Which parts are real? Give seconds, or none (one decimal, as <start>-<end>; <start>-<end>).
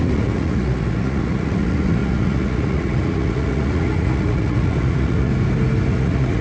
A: 5.3-5.9